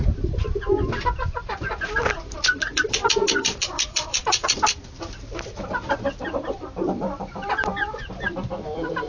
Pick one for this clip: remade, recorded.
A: remade